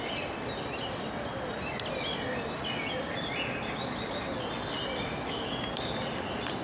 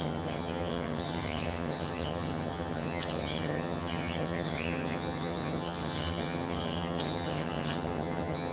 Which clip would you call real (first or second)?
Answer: first